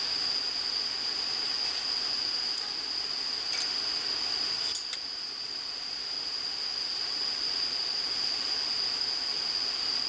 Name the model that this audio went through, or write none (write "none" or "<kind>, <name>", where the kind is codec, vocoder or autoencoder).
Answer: none